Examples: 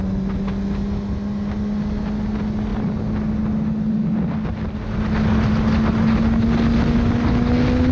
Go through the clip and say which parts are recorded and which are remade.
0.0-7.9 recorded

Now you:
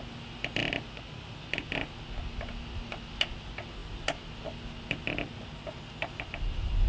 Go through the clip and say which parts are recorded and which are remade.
0.0-6.9 recorded

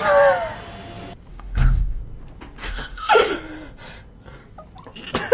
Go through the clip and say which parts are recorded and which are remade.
0.0-1.3 recorded; 1.3-2.0 remade; 2.0-2.6 recorded; 2.6-3.3 remade; 3.3-5.3 recorded

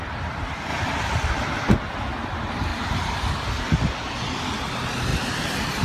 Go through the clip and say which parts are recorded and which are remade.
0.0-2.7 recorded; 2.7-3.5 remade; 3.5-5.8 recorded

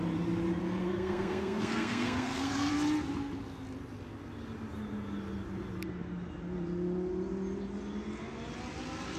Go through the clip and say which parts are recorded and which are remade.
0.0-0.8 recorded; 0.8-2.7 remade; 2.7-9.2 recorded

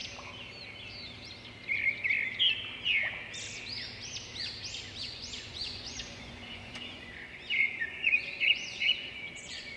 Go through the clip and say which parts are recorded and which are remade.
0.0-5.0 recorded; 5.0-9.8 remade